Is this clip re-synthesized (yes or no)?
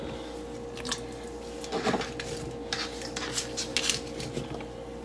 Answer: no